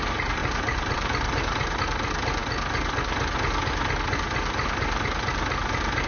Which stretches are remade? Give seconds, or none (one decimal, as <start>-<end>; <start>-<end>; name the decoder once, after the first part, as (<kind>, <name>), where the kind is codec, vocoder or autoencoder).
0.4-1.8 (vocoder, BigVGAN v2)